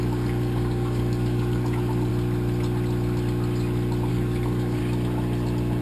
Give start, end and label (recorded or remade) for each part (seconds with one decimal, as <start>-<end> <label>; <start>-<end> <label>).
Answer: 0.0-2.1 remade; 2.1-4.1 recorded; 4.1-4.8 remade; 4.8-5.8 recorded